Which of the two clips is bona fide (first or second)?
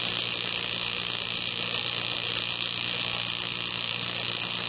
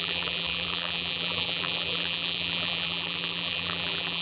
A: first